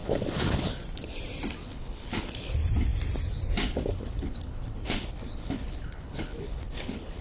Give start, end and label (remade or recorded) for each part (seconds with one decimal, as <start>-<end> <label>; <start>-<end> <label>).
0.0-0.8 remade; 0.8-1.6 recorded; 1.6-2.5 remade; 2.5-3.9 recorded; 3.9-7.2 remade